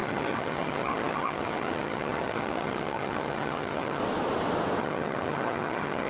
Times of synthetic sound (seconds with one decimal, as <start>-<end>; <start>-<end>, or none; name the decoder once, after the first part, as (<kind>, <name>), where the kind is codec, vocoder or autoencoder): 0.0-4.0 (vocoder, HiFi-GAN); 4.8-6.1